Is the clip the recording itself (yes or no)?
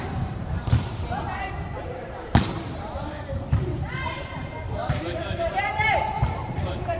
no